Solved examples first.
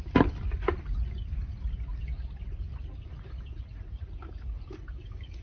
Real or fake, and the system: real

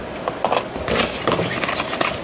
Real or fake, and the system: real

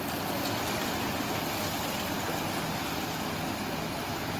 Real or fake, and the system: real